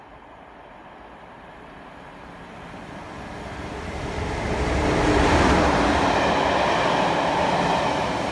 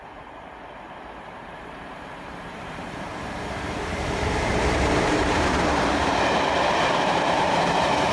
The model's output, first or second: second